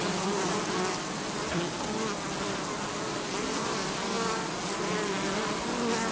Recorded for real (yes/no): yes